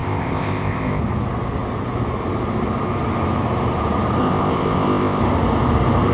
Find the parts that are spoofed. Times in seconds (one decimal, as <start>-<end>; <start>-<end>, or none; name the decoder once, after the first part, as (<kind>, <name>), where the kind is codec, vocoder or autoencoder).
0.0-1.0 (codec, ZipCodec); 4.2-5.2